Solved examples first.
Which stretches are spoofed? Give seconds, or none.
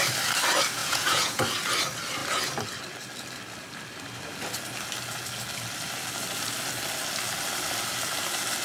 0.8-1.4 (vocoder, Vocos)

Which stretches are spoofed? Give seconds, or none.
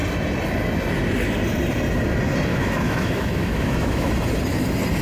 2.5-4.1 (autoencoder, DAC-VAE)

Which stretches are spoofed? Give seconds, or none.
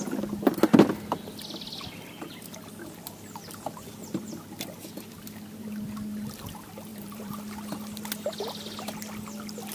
6.9-7.4 (vocoder, BigVGAN v2)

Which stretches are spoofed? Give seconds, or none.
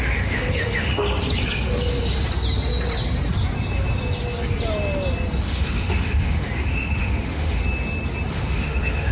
0.0-0.9 (autoencoder, DAC-VAE); 5.4-7.6; 8.3-9.1